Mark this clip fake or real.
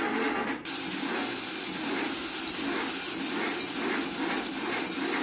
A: real